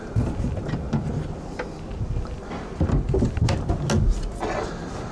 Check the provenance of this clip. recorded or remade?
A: recorded